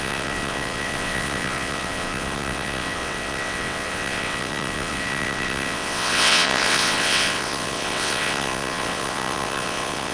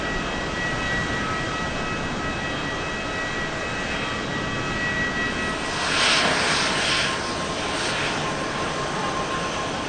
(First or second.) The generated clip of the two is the first